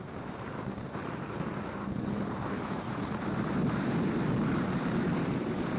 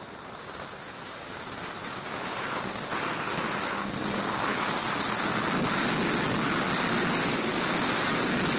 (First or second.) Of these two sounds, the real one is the second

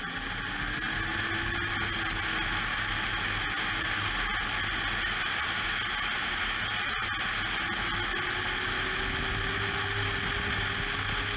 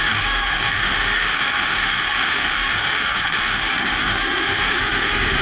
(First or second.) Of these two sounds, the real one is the first